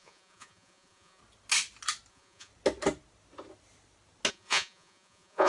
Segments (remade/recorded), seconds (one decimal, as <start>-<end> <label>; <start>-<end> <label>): 0.0-1.2 remade; 1.2-2.1 recorded; 2.1-2.5 remade; 2.5-4.3 recorded; 4.3-5.5 remade